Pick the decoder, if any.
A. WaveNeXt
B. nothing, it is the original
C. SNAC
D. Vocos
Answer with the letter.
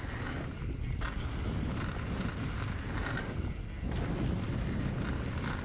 B